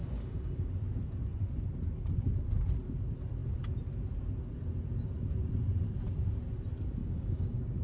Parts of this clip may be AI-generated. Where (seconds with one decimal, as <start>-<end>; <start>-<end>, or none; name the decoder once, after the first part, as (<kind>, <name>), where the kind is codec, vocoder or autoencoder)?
0.0-0.7 (codec, DAC); 7.0-7.8